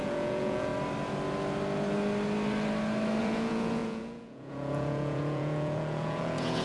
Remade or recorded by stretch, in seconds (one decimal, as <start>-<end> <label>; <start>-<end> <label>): 0.0-0.7 remade; 0.7-3.2 recorded; 3.2-6.6 remade